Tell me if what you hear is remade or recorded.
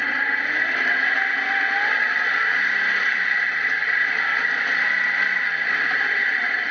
recorded